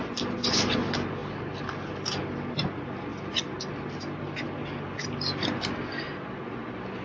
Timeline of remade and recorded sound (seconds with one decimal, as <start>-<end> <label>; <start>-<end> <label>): 0.0-7.0 recorded